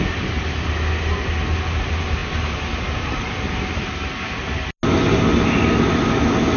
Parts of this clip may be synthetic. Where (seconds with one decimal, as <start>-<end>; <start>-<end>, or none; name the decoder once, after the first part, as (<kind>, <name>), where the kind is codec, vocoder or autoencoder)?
none